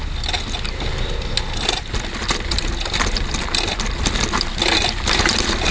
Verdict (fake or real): real